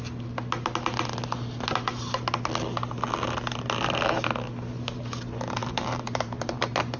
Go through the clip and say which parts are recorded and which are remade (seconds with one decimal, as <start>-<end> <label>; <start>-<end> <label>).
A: 0.0-5.6 recorded; 5.6-6.6 remade; 6.6-7.0 recorded